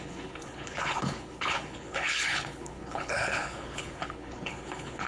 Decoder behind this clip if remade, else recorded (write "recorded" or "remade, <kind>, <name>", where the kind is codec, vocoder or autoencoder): remade, codec, HILCodec